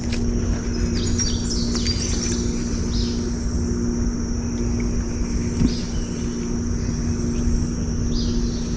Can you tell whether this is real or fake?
real